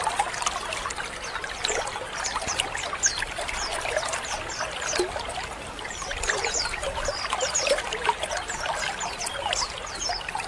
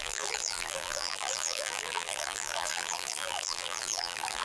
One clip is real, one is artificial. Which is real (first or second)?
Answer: first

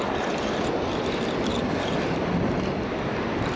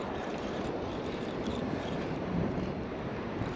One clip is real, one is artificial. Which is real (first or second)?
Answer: first